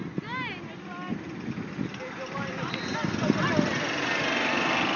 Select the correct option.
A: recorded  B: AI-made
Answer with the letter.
A